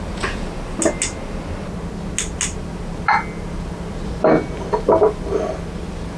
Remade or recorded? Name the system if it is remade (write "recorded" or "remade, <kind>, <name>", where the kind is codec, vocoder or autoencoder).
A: recorded